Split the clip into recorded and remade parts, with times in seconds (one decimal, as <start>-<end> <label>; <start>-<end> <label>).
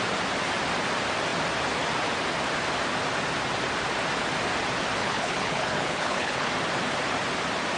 0.0-5.0 recorded; 5.0-6.5 remade; 6.5-7.8 recorded